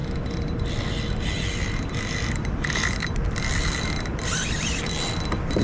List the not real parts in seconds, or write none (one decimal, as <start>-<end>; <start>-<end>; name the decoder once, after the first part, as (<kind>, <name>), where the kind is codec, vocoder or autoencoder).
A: none